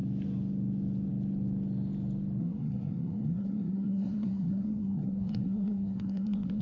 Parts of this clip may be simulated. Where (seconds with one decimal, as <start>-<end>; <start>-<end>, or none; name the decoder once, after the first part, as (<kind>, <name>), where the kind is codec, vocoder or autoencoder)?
2.4-6.6 (codec, SNAC)